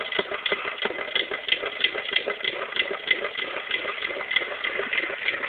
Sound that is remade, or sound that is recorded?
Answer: recorded